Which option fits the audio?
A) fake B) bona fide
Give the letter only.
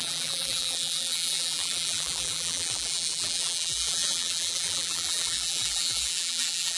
A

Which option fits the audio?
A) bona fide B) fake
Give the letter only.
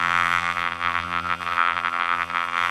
B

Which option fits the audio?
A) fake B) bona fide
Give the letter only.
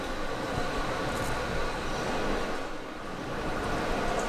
B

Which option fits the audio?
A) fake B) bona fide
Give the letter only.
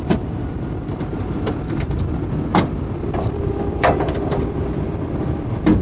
A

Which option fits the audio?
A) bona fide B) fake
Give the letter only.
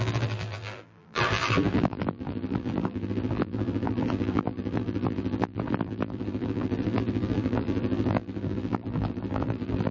B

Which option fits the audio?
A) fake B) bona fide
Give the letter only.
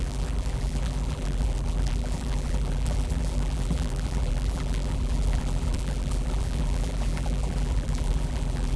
A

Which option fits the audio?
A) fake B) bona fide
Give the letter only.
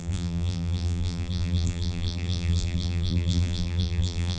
A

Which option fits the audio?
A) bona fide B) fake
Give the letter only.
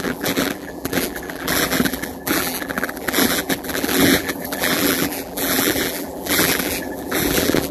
B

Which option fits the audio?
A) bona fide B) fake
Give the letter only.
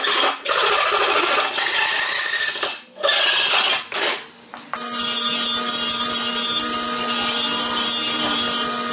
A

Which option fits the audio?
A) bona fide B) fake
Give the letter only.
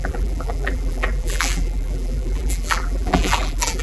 B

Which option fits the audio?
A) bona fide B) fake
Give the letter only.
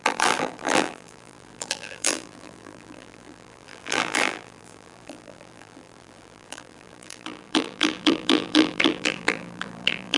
B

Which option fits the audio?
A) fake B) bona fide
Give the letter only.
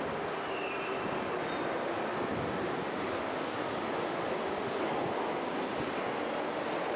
B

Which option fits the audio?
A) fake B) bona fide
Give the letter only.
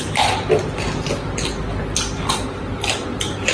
B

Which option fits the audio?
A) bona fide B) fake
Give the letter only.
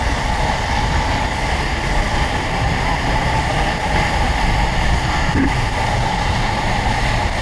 A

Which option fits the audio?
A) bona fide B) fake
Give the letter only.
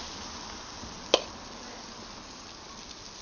A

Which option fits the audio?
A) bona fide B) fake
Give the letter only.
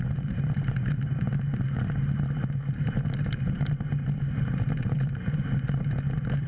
B